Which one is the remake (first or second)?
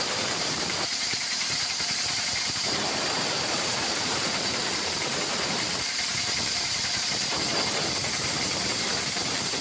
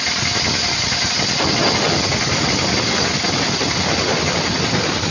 first